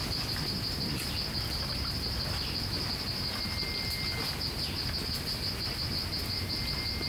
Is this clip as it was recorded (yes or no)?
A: yes